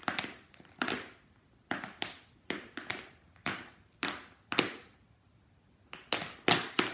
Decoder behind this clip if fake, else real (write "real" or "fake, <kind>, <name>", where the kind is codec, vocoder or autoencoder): real